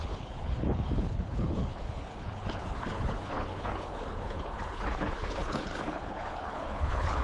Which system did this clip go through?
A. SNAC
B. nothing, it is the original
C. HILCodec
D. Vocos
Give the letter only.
C